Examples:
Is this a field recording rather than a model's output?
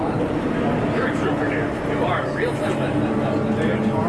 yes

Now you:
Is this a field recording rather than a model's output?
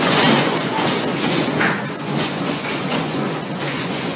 no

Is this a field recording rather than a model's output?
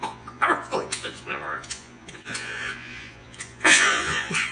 no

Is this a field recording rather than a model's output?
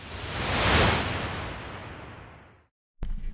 yes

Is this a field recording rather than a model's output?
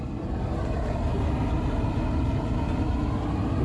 yes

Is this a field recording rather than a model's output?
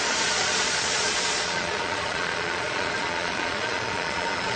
no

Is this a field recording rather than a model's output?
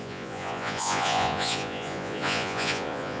no